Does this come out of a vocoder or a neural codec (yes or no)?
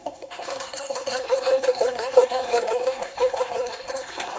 yes